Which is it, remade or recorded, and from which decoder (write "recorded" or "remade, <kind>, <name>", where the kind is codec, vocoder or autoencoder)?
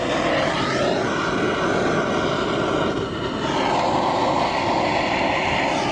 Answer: recorded